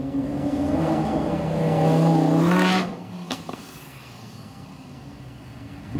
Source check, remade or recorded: remade